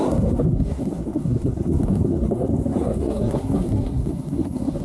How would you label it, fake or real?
fake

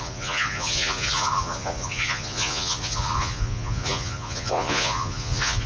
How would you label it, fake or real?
fake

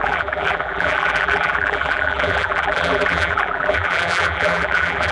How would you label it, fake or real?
fake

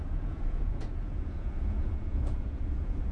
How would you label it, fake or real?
fake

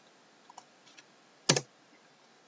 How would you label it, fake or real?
real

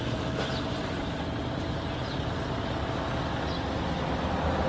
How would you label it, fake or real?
real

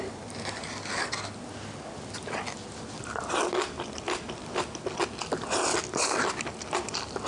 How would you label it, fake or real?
real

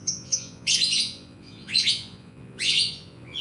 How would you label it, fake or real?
fake